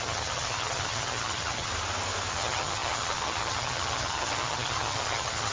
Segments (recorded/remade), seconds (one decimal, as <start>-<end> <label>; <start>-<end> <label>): 0.0-1.7 remade; 1.7-2.3 recorded; 2.3-5.5 remade